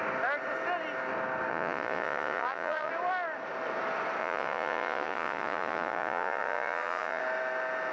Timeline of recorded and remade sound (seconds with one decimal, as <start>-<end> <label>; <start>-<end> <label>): 0.0-1.5 recorded; 1.5-2.9 remade; 2.9-4.2 recorded; 4.2-7.2 remade; 7.2-7.9 recorded